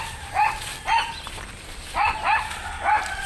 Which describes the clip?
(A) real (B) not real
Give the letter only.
A